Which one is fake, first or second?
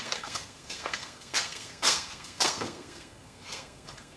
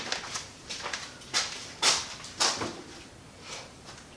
first